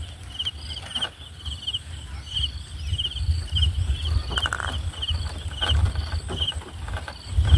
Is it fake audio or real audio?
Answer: real